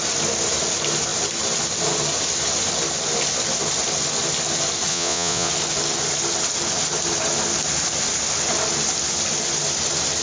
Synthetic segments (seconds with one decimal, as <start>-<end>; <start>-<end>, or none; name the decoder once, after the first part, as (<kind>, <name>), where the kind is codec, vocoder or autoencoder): 4.9-5.5 (vocoder, Vocos)